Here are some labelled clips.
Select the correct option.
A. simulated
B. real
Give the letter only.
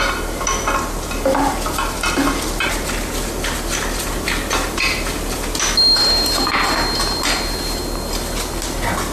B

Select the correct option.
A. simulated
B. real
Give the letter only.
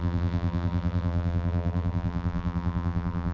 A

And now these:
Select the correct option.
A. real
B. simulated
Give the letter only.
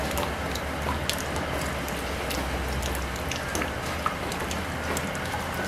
A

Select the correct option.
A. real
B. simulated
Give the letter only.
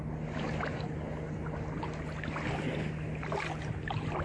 A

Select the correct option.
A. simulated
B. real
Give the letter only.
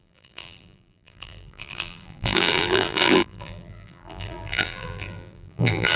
A